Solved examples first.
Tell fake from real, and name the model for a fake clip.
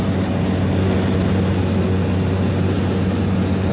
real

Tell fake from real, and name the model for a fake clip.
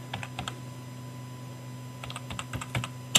real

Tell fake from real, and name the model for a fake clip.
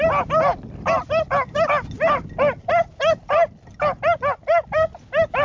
real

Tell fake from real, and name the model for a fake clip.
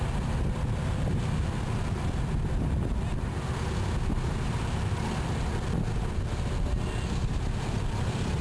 real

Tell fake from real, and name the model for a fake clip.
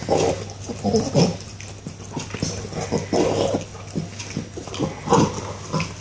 real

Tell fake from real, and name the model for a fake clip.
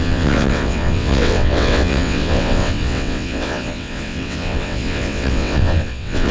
fake, vocoder, WaveNeXt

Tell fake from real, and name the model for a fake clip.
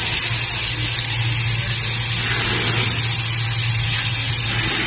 real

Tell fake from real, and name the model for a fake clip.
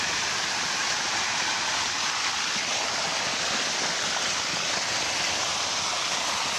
real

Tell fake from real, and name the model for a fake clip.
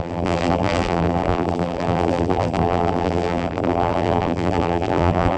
fake, vocoder, BigVGAN v2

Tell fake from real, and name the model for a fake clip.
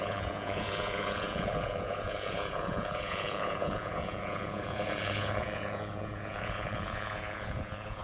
fake, vocoder, Vocos